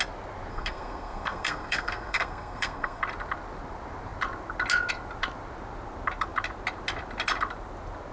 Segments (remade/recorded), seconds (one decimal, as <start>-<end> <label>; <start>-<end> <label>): 0.0-0.5 recorded; 0.5-3.0 remade; 3.0-8.1 recorded